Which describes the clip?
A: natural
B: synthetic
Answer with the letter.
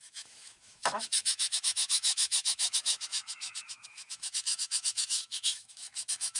B